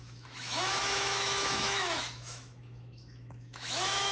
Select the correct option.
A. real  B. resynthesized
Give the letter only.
B